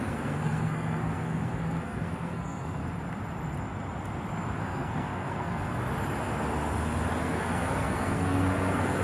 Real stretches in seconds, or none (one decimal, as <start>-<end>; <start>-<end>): 2.8-4.6; 5.8-7.2